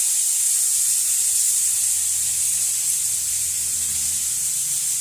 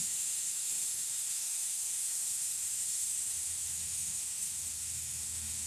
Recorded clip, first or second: first